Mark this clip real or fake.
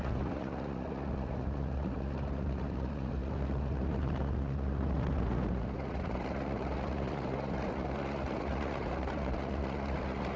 fake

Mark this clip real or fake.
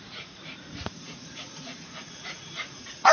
fake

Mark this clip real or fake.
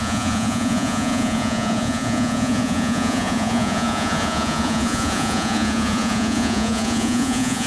fake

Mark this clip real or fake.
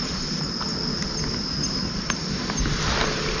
real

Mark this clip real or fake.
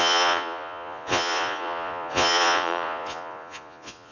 fake